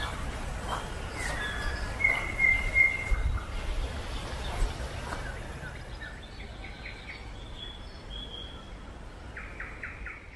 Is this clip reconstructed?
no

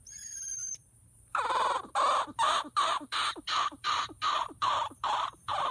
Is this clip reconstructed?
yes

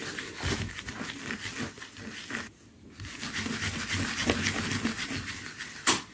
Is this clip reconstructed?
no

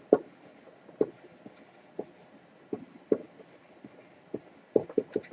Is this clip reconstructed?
no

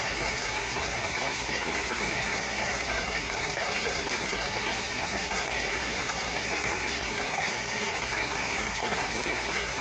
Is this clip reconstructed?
yes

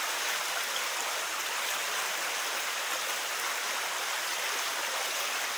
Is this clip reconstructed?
no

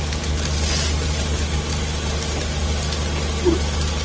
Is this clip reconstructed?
no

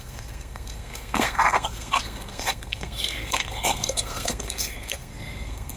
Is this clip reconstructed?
yes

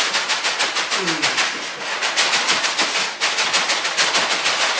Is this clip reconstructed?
no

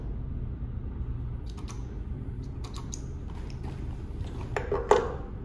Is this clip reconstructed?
no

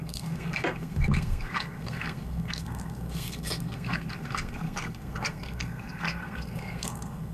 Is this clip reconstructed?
yes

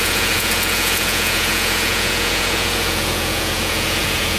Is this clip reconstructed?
yes